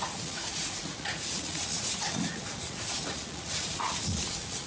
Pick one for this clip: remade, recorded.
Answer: remade